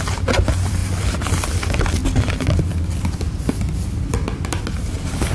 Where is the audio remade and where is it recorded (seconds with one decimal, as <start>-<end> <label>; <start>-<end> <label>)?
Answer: 0.0-5.3 recorded